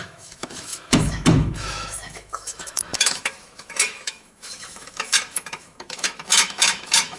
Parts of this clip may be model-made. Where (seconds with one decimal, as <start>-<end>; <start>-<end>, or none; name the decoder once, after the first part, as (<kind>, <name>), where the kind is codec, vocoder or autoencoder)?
0.0-7.2 (autoencoder, DAC-VAE)